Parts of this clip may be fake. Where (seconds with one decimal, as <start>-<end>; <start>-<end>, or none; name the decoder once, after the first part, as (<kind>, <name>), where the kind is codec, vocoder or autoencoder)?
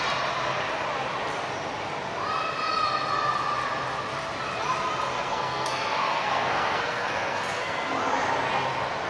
5.1-7.9 (codec, SNAC)